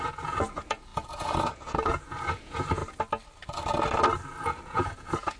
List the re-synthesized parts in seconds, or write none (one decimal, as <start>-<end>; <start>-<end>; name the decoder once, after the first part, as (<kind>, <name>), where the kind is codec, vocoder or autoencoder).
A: 0.0-2.8 (vocoder, Vocos); 4.6-5.4